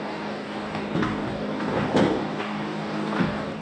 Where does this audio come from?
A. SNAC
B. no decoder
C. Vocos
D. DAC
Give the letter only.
D